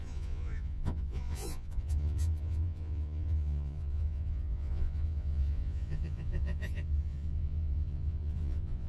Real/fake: fake